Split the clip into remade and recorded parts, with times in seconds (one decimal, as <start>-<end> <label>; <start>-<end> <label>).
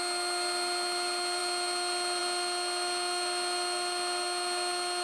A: 0.0-5.0 recorded